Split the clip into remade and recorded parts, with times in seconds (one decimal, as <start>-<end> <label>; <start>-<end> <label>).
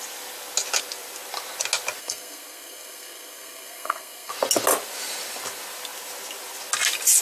0.0-2.0 recorded; 2.0-4.3 remade; 4.3-7.2 recorded